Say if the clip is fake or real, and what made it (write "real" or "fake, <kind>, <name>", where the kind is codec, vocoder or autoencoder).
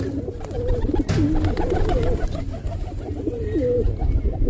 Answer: fake, vocoder, BigVGAN v2